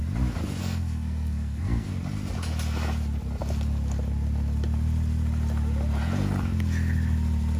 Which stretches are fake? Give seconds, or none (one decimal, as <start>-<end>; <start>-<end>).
0.6-1.9